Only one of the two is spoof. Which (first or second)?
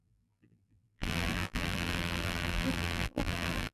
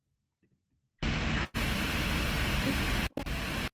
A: first